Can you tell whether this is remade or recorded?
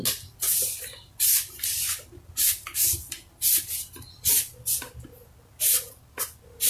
recorded